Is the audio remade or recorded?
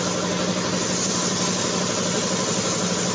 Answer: recorded